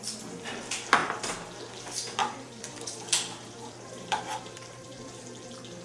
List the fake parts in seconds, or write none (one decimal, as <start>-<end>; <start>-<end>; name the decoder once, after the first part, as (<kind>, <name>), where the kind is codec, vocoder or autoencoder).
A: 2.2-5.0 (vocoder, BigVGAN v2)